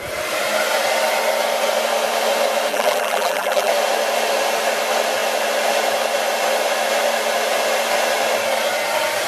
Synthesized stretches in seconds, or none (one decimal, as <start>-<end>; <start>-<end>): 2.7-3.7